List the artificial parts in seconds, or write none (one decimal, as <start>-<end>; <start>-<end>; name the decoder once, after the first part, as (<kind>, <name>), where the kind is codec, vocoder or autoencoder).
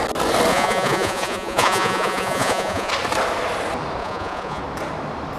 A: 0.5-2.9 (vocoder, Vocos); 4.0-4.6